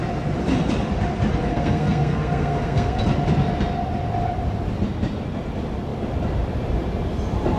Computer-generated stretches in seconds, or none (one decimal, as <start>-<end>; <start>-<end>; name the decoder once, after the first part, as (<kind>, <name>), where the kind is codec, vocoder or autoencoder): 1.5-3.0 (codec, SNAC)